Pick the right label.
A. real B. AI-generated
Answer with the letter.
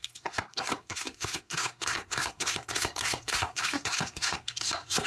B